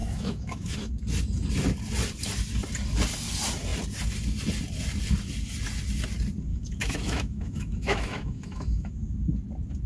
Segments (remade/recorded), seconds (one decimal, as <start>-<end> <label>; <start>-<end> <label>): 0.0-0.9 remade; 0.9-6.5 recorded; 6.5-8.9 remade; 8.9-9.9 recorded